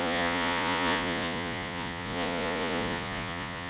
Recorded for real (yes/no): no